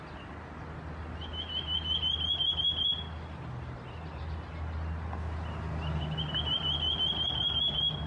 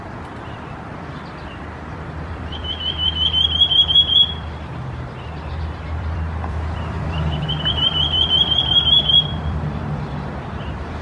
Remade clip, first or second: second